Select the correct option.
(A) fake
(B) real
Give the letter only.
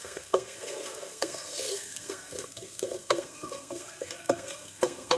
A